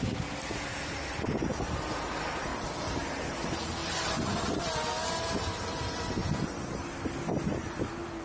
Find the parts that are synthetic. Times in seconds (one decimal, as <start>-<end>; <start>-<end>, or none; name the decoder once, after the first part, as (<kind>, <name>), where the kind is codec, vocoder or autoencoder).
0.7-1.7 (vocoder, BigVGAN v2); 2.5-3.2